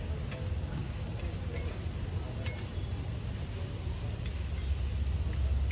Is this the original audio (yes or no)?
yes